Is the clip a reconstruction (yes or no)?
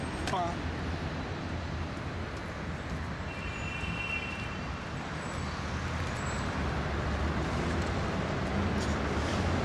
no